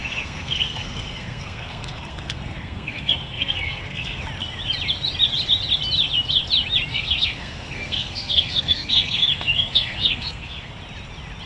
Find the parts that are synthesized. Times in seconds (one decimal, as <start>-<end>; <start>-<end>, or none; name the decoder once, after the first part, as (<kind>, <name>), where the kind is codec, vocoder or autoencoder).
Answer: 0.0-4.2 (codec, SNAC); 6.9-10.7